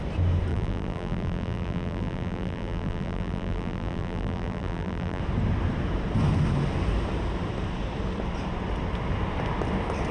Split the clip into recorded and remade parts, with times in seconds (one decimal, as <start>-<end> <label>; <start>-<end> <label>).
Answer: 0.0-0.5 recorded; 0.5-5.2 remade; 5.2-10.1 recorded